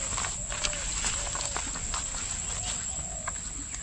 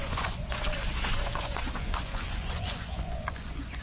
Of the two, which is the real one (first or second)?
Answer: first